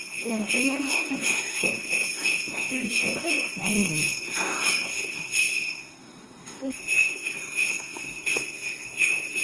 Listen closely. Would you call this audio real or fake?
fake